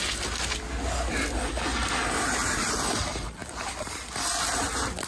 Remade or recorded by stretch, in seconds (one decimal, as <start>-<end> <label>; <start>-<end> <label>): 0.0-3.4 recorded; 3.4-4.4 remade; 4.4-5.1 recorded